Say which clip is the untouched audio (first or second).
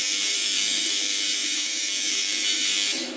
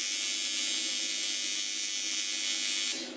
second